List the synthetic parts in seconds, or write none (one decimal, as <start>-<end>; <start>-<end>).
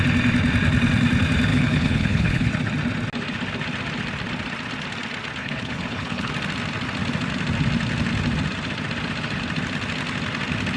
1.5-2.5; 5.4-6.3